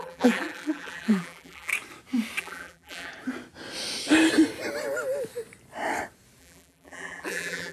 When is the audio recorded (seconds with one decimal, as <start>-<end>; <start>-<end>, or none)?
1.7-2.4; 3.1-6.4